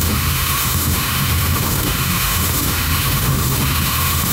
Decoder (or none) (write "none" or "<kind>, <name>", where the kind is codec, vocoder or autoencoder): autoencoder, DAC-VAE